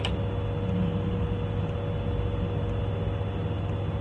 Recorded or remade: recorded